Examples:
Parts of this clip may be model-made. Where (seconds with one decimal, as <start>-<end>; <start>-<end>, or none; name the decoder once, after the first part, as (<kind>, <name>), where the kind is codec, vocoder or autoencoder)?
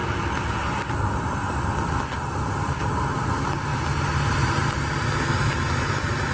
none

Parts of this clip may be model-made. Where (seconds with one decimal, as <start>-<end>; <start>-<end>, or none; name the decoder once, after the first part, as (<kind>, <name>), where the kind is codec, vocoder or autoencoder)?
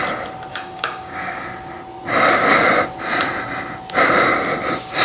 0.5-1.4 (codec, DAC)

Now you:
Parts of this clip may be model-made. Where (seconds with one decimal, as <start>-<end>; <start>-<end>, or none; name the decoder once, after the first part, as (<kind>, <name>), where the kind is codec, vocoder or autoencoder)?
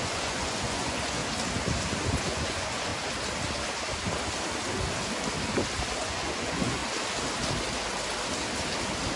0.0-1.2 (vocoder, Vocos); 2.2-2.9; 6.0-6.8